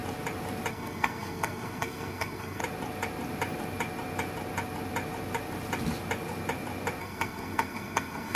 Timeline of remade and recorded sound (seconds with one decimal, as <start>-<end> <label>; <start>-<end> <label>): 0.0-0.7 recorded; 0.7-2.6 remade; 2.6-7.0 recorded; 7.0-8.4 remade